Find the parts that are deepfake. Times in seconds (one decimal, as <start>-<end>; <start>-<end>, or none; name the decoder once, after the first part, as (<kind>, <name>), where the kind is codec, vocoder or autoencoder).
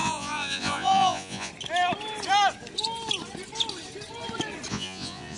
0.0-1.5 (vocoder, Vocos); 4.7-5.4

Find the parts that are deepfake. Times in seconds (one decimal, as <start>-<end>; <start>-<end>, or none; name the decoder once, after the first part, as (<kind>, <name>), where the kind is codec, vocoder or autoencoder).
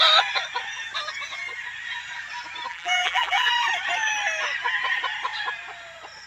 2.7-3.5 (vocoder, BigVGAN v2)